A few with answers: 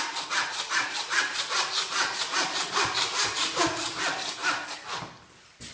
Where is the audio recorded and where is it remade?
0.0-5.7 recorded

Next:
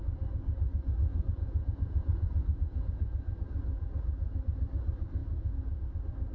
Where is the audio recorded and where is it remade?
0.0-1.0 recorded; 1.0-3.0 remade; 3.0-5.2 recorded; 5.2-5.8 remade; 5.8-6.3 recorded

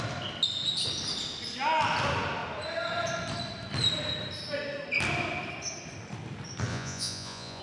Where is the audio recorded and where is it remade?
0.0-6.7 recorded; 6.7-7.6 remade

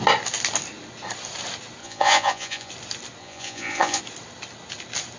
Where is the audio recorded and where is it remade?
0.0-1.8 recorded; 1.8-2.7 remade; 2.7-3.2 recorded; 3.2-4.0 remade; 4.0-5.2 recorded

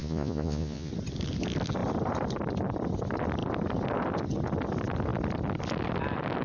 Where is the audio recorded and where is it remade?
0.0-0.9 remade; 0.9-6.4 recorded